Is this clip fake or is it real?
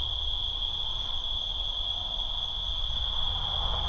real